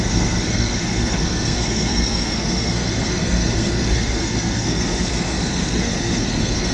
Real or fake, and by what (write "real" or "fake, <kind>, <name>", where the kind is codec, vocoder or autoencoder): fake, codec, SNAC